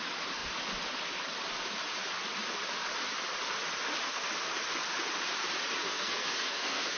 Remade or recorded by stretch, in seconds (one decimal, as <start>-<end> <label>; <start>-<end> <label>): 0.0-5.8 recorded; 5.8-7.0 remade